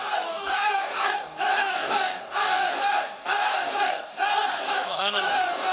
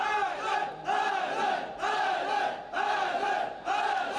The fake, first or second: first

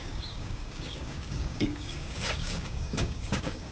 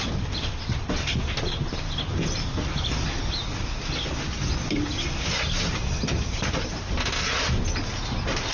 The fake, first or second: first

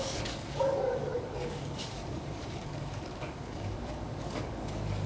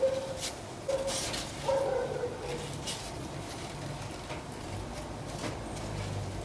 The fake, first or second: first